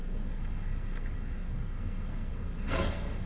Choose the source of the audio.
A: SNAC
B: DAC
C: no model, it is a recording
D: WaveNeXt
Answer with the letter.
A